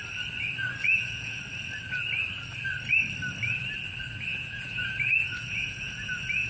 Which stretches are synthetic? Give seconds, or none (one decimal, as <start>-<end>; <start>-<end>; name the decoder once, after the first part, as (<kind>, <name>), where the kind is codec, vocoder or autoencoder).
0.8-1.4 (vocoder, Vocos); 4.3-6.5